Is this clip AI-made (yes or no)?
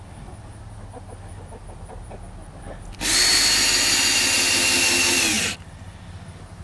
no